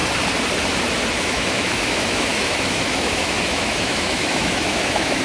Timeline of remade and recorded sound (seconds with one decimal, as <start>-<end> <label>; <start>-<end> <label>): 0.0-1.2 recorded; 1.2-5.2 remade